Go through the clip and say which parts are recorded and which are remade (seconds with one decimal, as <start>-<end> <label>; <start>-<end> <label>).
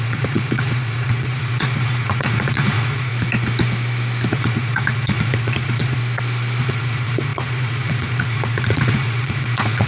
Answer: 0.0-3.1 remade; 3.1-4.3 recorded; 4.3-6.0 remade; 6.0-6.6 recorded; 6.6-9.9 remade